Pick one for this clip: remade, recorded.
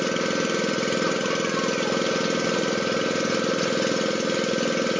recorded